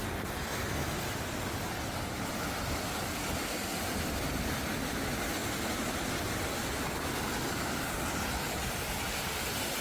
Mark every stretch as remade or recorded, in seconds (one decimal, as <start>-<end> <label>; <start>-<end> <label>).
0.0-9.8 recorded